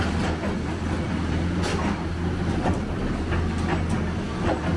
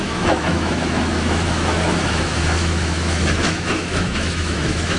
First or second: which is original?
first